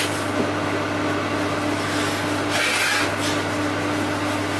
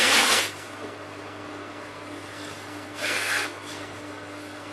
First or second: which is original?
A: first